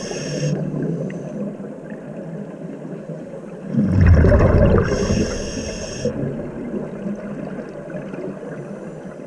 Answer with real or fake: real